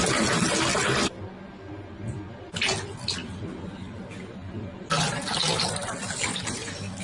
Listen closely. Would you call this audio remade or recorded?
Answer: recorded